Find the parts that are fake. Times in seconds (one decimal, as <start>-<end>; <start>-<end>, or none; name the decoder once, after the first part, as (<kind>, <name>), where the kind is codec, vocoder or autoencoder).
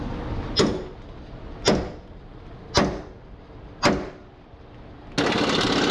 none